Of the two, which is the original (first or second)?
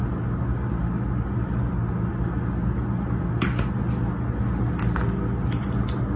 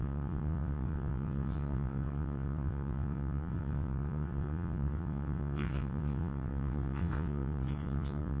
first